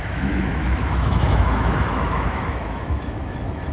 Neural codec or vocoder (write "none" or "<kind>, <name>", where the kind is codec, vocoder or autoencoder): autoencoder, DAC-VAE